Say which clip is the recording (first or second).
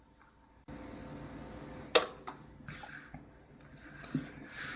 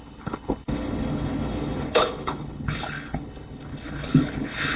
first